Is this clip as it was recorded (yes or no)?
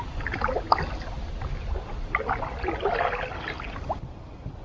yes